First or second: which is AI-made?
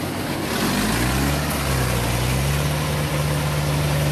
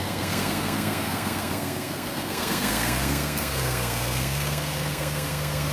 second